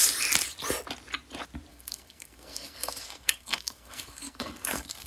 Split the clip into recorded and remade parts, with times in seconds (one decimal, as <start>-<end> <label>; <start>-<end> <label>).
0.0-1.7 recorded; 1.7-5.1 remade